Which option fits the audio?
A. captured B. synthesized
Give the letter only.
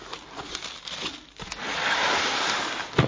A